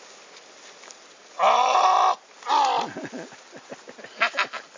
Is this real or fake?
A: real